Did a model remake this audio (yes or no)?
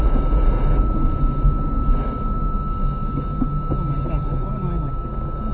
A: no